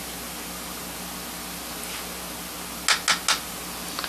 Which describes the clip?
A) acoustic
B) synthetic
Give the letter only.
A